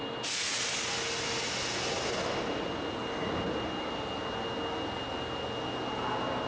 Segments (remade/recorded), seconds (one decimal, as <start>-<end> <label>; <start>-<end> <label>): 0.0-6.5 recorded